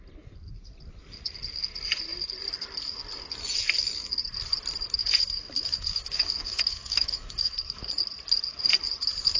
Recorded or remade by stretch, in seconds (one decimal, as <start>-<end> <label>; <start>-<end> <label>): 0.0-5.0 recorded; 5.0-7.9 remade; 7.9-9.4 recorded